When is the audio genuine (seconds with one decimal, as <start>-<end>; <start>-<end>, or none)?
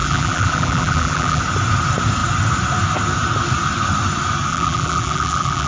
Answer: 1.4-4.5